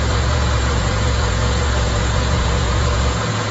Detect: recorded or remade remade